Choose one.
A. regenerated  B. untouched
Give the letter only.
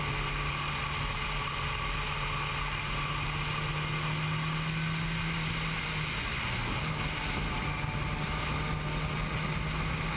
B